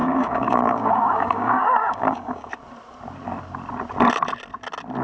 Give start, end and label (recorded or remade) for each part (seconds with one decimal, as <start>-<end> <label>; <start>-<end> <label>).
0.0-2.5 remade; 2.5-5.0 recorded